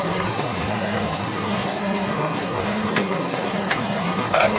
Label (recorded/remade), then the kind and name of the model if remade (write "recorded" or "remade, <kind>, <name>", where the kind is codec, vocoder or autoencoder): remade, codec, SNAC